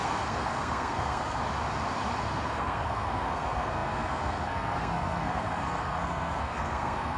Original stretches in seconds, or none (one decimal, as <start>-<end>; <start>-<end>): 1.4-2.2